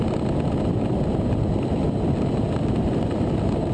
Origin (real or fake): real